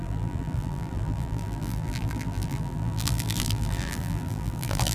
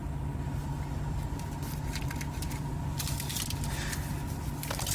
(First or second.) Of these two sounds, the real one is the second